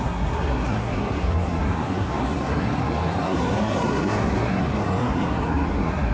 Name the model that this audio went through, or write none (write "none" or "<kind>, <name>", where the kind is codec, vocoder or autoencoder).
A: codec, SNAC